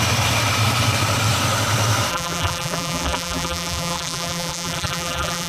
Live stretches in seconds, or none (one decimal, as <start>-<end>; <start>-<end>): 0.0-2.1